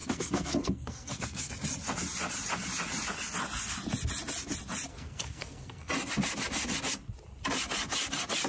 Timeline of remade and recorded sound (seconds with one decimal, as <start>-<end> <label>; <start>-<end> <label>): 0.0-1.5 remade; 1.5-4.9 recorded; 4.9-5.9 remade; 5.9-8.5 recorded